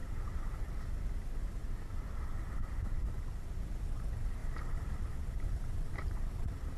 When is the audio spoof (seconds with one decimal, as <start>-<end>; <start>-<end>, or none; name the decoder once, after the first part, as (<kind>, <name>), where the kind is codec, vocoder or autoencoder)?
0.0-0.6 (vocoder, BigVGAN v2); 1.6-3.6; 4.4-6.8